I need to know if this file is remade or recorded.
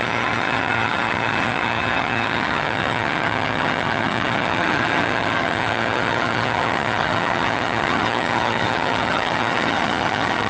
remade